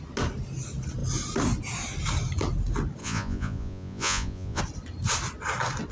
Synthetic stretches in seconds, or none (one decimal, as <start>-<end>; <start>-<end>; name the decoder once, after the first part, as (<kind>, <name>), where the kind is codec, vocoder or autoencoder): 3.0-4.6 (vocoder, Vocos)